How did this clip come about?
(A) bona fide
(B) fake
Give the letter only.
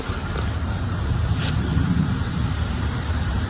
B